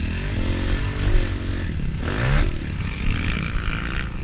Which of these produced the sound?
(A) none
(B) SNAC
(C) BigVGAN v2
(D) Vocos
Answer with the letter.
A